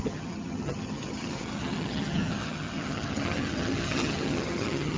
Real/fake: fake